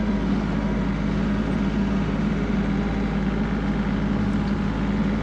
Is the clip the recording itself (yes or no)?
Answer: yes